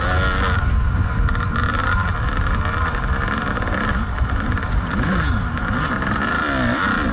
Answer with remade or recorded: recorded